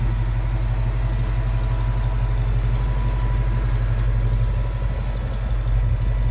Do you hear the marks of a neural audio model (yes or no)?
no